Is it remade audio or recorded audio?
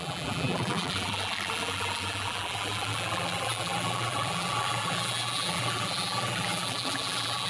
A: remade